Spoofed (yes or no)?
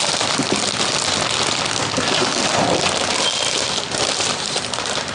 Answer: no